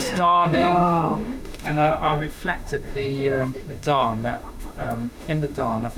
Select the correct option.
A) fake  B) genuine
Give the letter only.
A